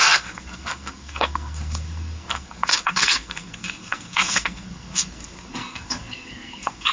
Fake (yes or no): yes